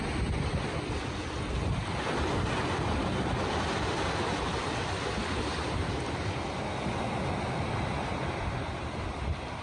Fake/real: real